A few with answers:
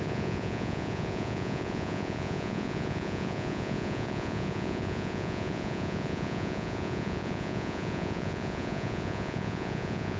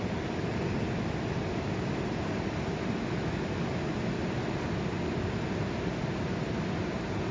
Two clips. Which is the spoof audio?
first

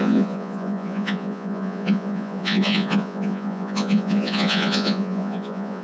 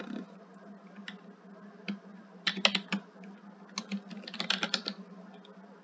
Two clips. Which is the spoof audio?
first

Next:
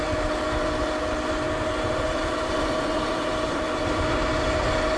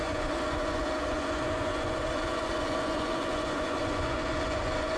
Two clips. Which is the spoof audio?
second